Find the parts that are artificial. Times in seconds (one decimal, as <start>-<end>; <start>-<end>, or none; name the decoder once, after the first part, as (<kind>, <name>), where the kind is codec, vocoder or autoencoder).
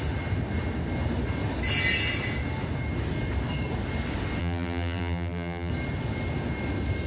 4.4-5.7 (vocoder, BigVGAN v2)